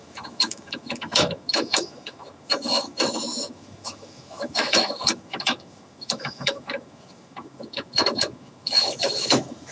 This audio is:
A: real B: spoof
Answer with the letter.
B